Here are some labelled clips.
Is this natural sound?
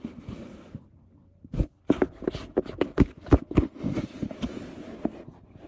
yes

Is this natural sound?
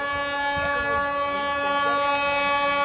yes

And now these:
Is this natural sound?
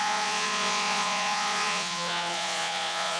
no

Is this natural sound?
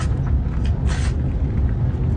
yes